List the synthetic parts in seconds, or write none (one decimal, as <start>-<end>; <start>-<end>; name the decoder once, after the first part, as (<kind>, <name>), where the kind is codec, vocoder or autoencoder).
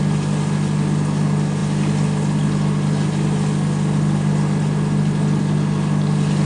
none